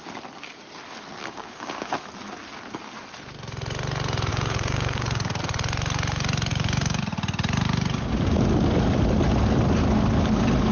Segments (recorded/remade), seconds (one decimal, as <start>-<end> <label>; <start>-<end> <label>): 0.0-1.2 recorded; 1.2-1.9 remade; 1.9-4.3 recorded; 4.3-5.4 remade; 5.4-6.5 recorded; 6.5-7.0 remade; 7.0-10.7 recorded

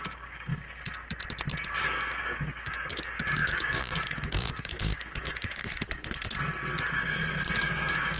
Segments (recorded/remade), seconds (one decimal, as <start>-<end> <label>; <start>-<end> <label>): 0.0-0.5 remade; 0.5-1.8 recorded; 1.8-5.6 remade; 5.6-7.6 recorded; 7.6-8.2 remade

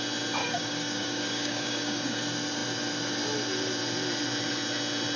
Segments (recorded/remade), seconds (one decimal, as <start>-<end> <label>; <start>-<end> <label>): 0.0-0.4 recorded; 0.4-2.2 remade; 2.2-5.2 recorded